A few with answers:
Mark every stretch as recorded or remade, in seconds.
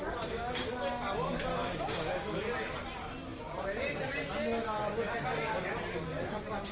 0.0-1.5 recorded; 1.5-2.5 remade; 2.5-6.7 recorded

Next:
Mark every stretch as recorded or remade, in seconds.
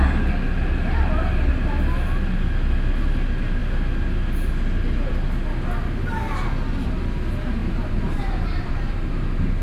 0.0-7.6 recorded; 7.6-9.1 remade; 9.1-9.6 recorded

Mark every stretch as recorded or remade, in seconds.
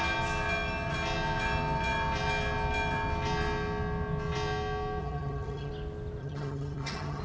0.0-5.0 recorded; 5.0-5.7 remade; 5.7-6.2 recorded; 6.2-7.2 remade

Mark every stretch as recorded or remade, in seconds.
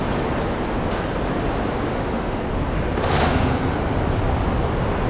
0.0-1.9 recorded; 1.9-2.4 remade; 2.4-3.0 recorded; 3.0-3.5 remade; 3.5-5.1 recorded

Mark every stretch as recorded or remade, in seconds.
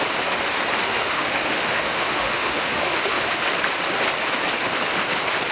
0.0-0.8 recorded; 0.8-3.2 remade; 3.2-5.5 recorded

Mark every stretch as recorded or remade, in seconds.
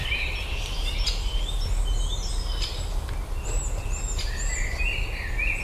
0.0-5.6 recorded